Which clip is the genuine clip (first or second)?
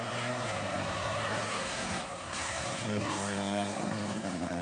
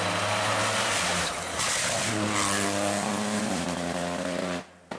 second